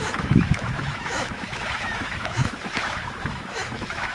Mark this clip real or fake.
fake